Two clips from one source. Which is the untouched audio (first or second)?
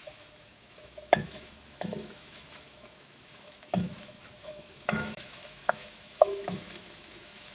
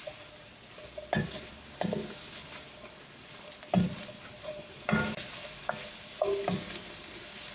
second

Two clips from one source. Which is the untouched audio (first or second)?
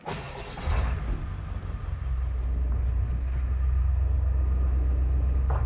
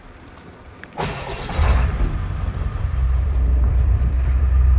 first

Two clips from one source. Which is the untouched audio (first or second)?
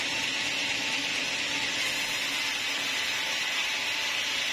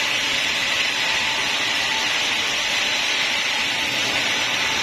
first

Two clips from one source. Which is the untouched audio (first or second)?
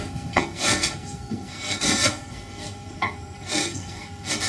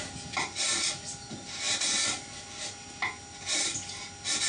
second